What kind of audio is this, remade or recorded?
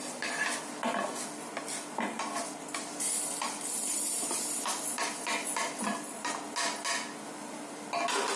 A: recorded